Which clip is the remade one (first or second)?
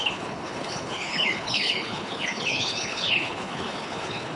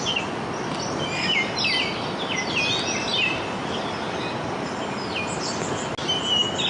first